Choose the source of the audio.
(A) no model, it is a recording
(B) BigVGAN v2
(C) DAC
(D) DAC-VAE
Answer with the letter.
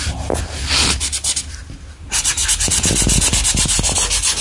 A